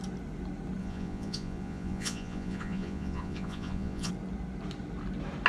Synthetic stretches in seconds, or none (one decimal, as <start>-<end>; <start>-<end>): 0.8-4.1